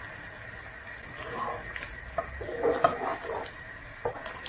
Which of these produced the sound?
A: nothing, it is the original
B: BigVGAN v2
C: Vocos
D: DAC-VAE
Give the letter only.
A